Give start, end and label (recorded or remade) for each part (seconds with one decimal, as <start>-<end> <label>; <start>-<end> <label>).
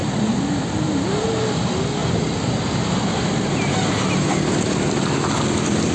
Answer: 0.0-1.2 remade; 1.2-2.0 recorded; 2.0-2.5 remade; 2.5-5.9 recorded